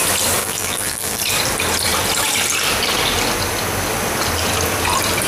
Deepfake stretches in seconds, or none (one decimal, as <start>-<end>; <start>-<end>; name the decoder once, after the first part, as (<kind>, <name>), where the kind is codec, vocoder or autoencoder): 0.4-1.2 (vocoder, BigVGAN v2)